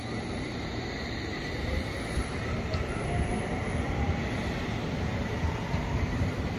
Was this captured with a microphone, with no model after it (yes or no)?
no